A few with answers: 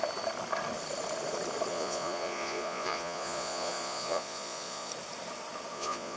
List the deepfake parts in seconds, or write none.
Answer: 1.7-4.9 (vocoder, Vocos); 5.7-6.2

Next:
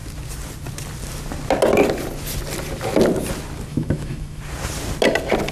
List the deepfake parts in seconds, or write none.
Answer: 3.7-4.4 (autoencoder, DAC-VAE)

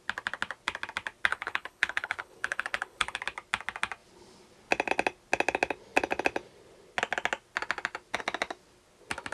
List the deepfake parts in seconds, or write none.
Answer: 1.3-3.2 (codec, HILCodec)

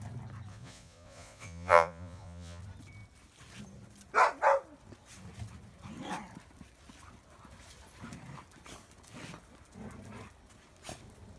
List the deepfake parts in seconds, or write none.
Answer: 0.5-2.6 (vocoder, Vocos)